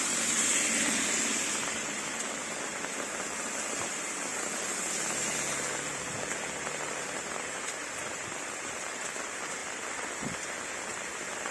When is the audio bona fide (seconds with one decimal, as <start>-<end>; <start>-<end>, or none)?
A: 0.0-11.5